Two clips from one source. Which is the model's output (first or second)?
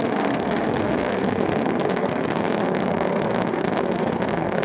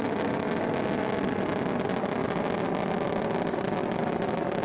first